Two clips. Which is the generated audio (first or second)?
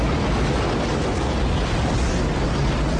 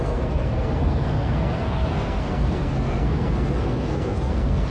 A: second